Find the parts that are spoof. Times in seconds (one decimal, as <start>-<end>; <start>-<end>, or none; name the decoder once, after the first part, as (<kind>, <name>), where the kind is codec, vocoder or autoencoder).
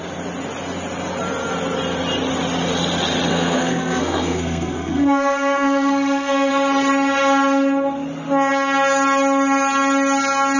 3.3-6.5 (codec, SNAC)